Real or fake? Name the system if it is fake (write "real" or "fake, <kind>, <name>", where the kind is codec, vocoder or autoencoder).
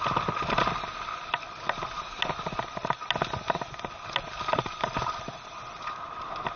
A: real